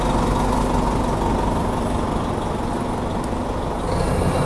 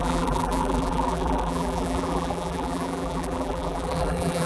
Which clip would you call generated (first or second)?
second